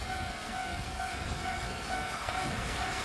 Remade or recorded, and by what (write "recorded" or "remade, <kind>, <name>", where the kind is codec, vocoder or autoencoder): remade, codec, SNAC